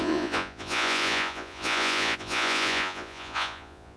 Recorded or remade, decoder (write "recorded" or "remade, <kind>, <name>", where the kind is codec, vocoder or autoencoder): remade, vocoder, Vocos